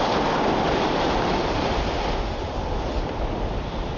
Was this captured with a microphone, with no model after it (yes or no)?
yes